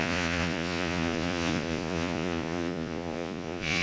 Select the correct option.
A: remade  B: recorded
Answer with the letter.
A